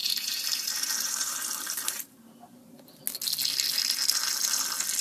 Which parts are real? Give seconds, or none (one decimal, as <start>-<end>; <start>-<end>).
3.0-5.0